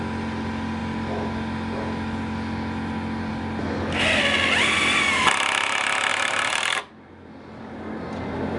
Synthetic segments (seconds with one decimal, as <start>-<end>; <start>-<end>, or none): 6.1-6.9